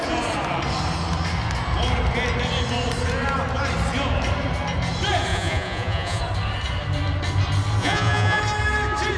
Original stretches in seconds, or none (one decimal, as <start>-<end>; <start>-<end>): 0.0-5.3; 6.2-7.8; 8.4-9.2